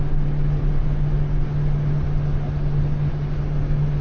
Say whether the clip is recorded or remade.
recorded